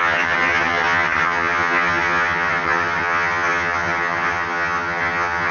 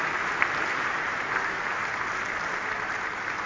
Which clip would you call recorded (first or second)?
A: second